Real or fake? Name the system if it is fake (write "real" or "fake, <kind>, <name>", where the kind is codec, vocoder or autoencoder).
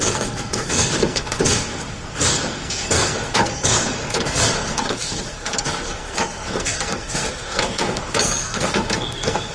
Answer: fake, codec, SNAC